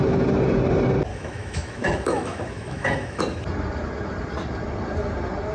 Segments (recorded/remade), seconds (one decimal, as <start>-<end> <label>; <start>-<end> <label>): 0.0-1.1 recorded; 1.1-3.2 remade; 3.2-5.5 recorded